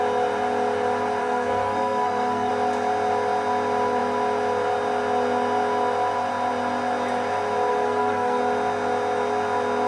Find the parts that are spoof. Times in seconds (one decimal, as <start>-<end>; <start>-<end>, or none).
1.2-2.5; 7.7-8.4

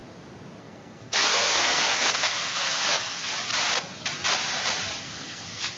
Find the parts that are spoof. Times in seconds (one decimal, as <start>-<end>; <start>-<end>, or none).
0.6-3.3; 5.0-5.8

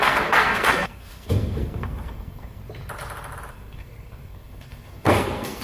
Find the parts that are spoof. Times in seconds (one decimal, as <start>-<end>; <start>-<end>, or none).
0.0-2.6; 3.5-5.6

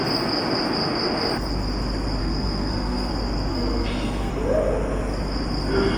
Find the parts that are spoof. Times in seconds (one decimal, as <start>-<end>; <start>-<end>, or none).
2.2-3.1; 3.5-4.3

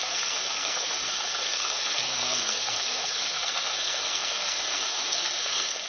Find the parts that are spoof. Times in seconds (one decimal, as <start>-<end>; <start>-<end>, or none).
0.0-5.9